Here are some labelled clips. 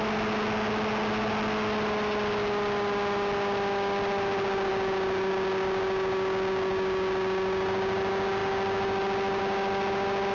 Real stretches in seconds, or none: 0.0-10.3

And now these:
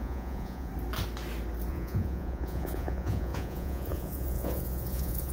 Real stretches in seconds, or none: 0.7-1.7

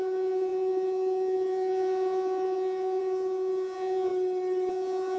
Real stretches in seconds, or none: 4.1-4.7

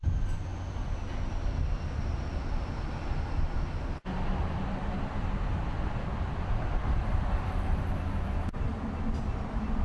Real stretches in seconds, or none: 0.0-9.8

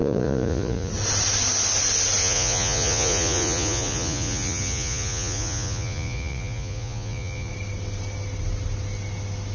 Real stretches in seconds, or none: 0.9-2.2; 7.5-9.5

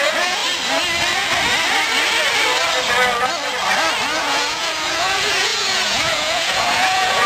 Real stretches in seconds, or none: 0.4-4.2

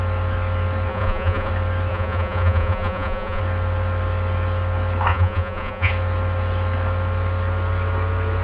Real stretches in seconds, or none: 0.0-0.9; 1.5-1.9; 3.4-5.1; 5.9-8.4

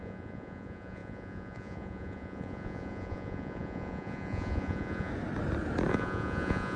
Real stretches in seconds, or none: 5.1-5.9